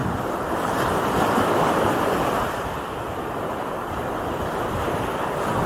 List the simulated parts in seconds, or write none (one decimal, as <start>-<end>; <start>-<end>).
0.0-0.6